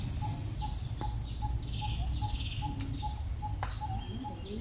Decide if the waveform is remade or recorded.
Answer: recorded